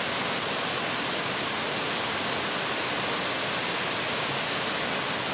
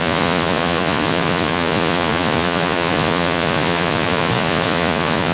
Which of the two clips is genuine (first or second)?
first